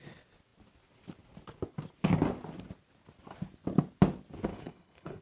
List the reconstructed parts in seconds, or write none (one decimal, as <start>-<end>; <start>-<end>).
4.5-5.2